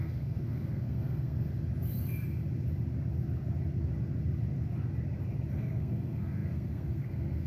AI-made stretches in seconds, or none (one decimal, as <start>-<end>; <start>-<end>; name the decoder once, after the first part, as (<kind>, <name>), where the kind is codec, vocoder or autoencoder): 0.0-1.5 (codec, SNAC); 5.5-7.5